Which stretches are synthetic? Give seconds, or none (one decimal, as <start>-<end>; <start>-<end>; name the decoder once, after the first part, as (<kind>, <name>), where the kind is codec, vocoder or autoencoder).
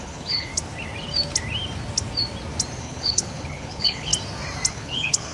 0.0-0.5 (codec, HILCodec); 2.8-4.1; 4.7-5.3